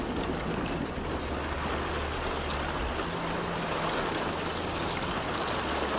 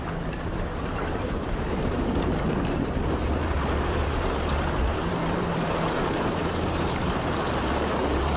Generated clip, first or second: second